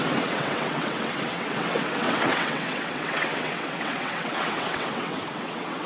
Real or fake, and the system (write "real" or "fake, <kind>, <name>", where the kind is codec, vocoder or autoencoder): fake, vocoder, WaveNeXt